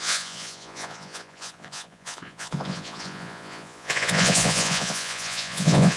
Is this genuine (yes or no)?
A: no